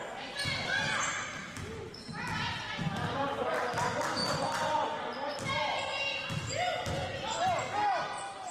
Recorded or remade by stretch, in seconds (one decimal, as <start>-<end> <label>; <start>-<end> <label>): 0.0-1.4 recorded; 1.4-2.1 remade; 2.1-8.5 recorded